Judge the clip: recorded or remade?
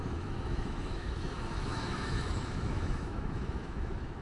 remade